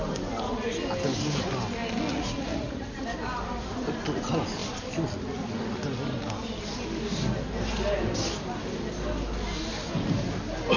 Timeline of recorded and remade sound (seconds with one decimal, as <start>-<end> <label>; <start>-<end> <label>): 0.0-2.1 recorded; 2.1-3.0 remade; 3.0-10.8 recorded